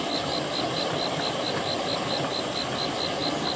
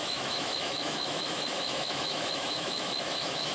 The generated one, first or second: second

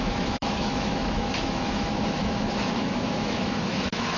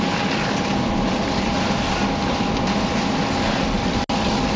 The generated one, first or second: first